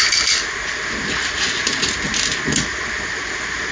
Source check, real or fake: real